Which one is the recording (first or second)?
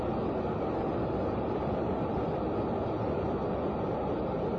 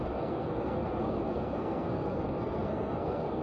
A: first